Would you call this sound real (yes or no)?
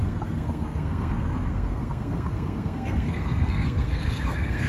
no